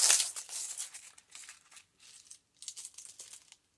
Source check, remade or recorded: recorded